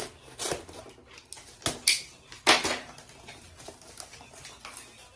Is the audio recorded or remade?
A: recorded